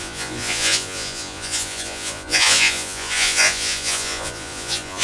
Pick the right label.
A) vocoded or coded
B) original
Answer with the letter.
A